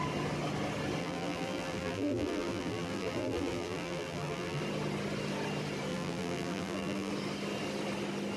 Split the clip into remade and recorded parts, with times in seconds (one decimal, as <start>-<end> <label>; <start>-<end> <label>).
0.0-1.0 recorded; 1.0-4.6 remade; 4.6-5.9 recorded; 5.9-7.1 remade; 7.1-8.4 recorded